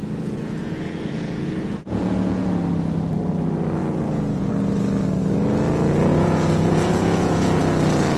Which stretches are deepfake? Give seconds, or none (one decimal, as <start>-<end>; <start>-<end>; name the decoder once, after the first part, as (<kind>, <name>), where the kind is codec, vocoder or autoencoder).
0.0-2.5 (vocoder, Vocos); 3.8-4.5; 6.1-7.6